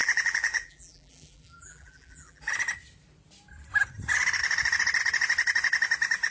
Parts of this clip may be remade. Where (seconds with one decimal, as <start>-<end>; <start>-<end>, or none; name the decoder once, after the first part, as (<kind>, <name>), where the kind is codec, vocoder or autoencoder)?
0.0-2.5 (vocoder, BigVGAN v2)